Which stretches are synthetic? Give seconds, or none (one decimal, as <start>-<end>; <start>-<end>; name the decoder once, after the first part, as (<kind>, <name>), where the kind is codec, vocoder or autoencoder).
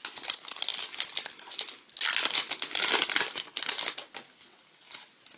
none